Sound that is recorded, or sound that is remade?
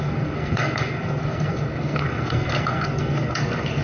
remade